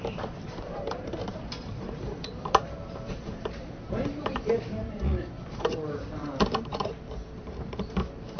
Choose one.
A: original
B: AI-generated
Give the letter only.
B